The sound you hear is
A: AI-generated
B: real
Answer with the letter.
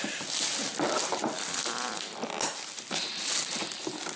B